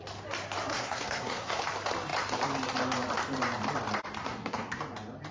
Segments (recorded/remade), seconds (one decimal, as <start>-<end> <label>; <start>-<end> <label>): 0.0-0.7 recorded; 0.7-1.6 remade; 1.6-4.2 recorded; 4.2-4.8 remade; 4.8-5.3 recorded